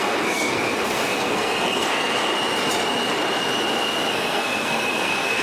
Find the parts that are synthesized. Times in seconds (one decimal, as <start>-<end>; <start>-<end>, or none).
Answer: 0.0-2.3; 4.1-5.4